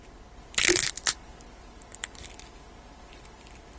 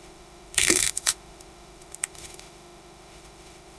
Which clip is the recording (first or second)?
first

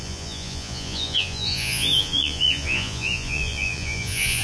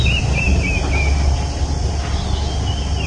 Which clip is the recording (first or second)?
second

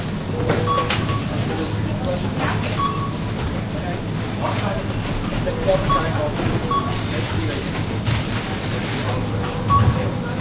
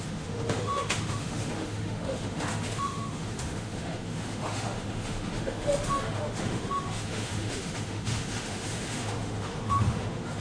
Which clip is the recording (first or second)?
first